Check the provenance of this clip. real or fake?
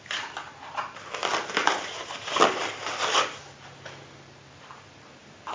real